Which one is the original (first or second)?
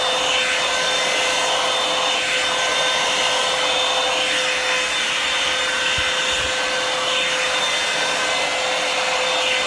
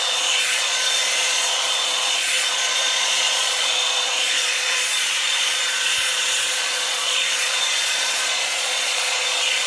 first